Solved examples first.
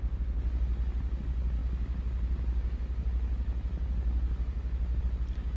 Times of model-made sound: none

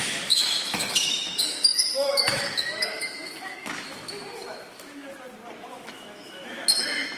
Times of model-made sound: 0.0-5.1 (autoencoder, DAC-VAE); 5.7-7.2

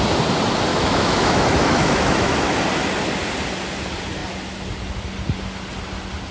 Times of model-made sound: 0.7-2.6 (autoencoder, DAC-VAE)

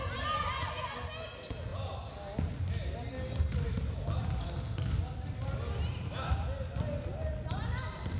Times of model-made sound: none

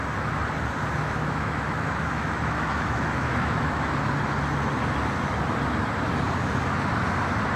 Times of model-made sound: 1.0-3.9 (autoencoder, DAC-VAE)